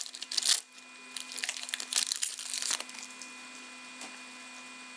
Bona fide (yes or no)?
yes